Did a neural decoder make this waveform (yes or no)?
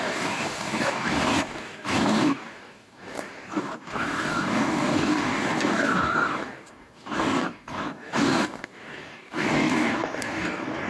yes